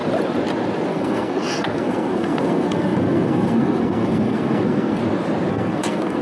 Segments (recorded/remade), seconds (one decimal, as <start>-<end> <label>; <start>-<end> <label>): 0.0-0.9 recorded; 0.9-5.0 remade; 5.0-5.5 recorded; 5.5-6.2 remade